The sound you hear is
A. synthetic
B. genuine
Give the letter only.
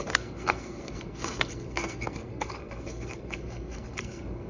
A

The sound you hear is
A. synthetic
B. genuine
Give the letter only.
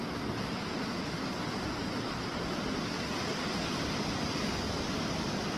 B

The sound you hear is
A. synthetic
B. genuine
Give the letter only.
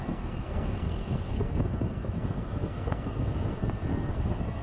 A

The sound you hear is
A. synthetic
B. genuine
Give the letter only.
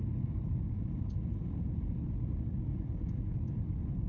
B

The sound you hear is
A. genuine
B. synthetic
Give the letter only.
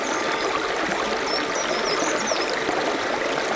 A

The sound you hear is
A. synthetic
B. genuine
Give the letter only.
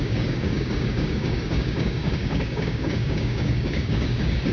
A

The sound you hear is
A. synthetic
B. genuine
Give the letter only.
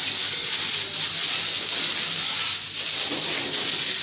B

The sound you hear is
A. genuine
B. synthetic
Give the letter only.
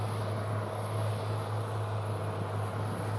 A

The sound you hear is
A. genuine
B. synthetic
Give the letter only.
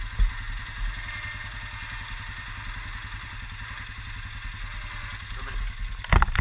A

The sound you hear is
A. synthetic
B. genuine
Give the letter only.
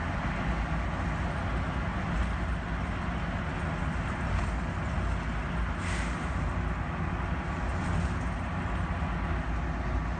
B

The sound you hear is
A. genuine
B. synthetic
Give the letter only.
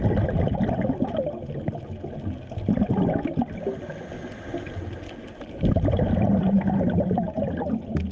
A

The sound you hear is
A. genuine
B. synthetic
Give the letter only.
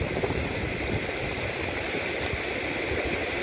A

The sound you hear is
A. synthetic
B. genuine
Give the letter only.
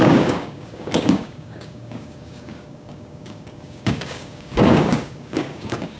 A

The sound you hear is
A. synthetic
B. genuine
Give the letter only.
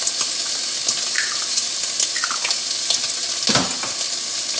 B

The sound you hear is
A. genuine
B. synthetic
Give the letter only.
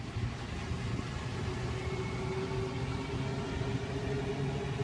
A